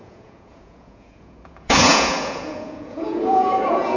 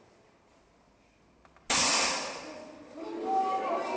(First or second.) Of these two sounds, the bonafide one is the second